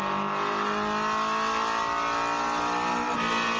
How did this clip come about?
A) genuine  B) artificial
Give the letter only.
A